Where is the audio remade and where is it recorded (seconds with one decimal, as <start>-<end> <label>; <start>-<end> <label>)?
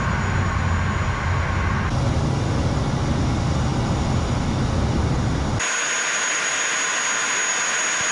0.0-8.1 recorded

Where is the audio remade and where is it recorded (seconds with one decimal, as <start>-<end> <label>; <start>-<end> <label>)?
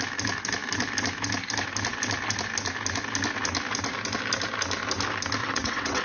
0.0-5.4 recorded; 5.4-6.0 remade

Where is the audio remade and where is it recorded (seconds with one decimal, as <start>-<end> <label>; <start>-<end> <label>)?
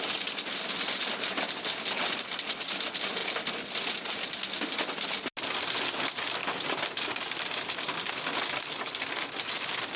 0.0-3.2 recorded; 3.2-3.9 remade; 3.9-6.4 recorded; 6.4-9.1 remade; 9.1-10.0 recorded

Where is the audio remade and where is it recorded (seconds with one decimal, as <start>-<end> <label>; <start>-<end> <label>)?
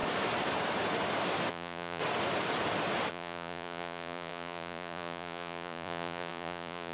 0.0-1.5 recorded; 1.5-2.0 remade; 2.0-3.1 recorded; 3.1-6.9 remade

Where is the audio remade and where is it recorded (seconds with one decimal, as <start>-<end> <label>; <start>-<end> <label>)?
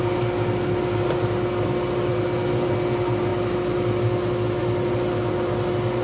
0.0-6.0 recorded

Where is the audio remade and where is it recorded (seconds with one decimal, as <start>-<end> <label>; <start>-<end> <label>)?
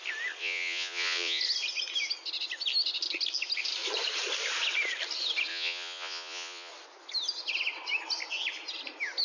0.0-0.4 recorded; 0.4-1.4 remade; 1.4-5.5 recorded; 5.5-6.7 remade; 6.7-9.2 recorded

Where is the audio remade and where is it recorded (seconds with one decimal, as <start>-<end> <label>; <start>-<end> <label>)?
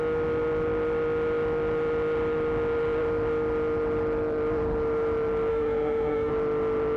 0.0-5.5 recorded; 5.5-6.3 remade; 6.3-7.0 recorded